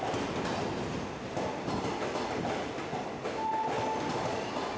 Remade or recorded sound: recorded